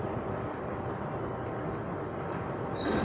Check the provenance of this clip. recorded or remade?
recorded